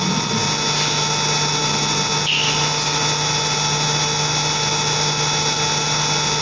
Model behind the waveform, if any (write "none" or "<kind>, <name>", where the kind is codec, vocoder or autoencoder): none